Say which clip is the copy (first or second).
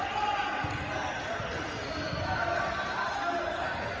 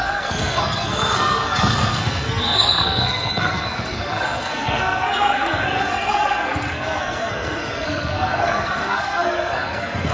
second